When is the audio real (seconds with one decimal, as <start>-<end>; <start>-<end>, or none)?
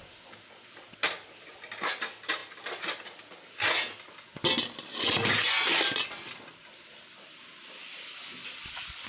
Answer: 0.0-9.1